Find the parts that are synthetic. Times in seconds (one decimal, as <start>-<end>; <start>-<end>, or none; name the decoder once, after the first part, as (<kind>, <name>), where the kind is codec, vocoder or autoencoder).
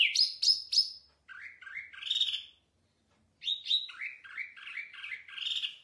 none